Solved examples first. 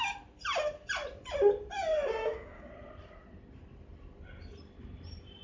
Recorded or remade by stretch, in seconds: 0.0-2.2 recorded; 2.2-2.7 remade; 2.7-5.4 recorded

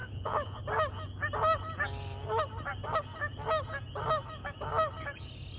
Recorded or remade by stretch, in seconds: 0.0-0.6 remade; 0.6-5.6 recorded

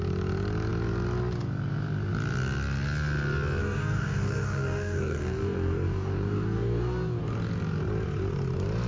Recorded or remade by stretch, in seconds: 0.0-3.6 recorded; 3.6-7.2 remade; 7.2-8.9 recorded